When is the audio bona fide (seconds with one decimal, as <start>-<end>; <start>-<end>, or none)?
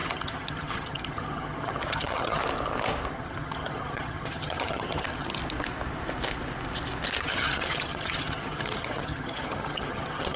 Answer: 2.4-3.1; 5.4-7.2